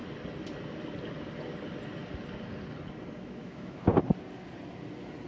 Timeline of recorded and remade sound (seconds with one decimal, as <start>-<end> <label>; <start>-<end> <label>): 0.0-3.2 recorded; 3.2-3.9 remade; 3.9-5.3 recorded